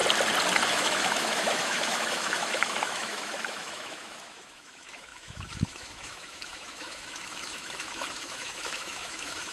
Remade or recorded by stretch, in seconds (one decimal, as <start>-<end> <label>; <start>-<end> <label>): 0.0-0.7 recorded; 0.7-9.5 remade